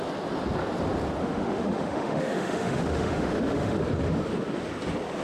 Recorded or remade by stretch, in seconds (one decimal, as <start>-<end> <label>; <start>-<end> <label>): 0.0-1.2 recorded; 1.2-3.8 remade; 3.8-5.2 recorded